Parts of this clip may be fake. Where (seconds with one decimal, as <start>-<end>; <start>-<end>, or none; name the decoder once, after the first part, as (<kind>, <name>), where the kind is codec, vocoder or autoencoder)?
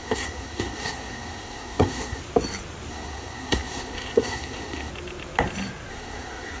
0.0-2.2 (codec, SNAC); 2.9-4.9; 5.9-6.6